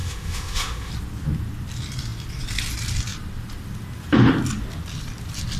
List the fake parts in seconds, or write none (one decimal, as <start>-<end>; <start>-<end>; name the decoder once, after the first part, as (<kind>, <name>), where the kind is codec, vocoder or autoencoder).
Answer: 0.0-0.9 (autoencoder, DAC-VAE)